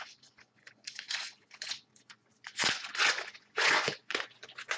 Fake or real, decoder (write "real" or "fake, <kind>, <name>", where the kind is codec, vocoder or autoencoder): fake, vocoder, Vocos